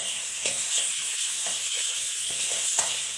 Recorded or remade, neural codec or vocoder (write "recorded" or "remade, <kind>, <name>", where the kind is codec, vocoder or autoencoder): remade, codec, SNAC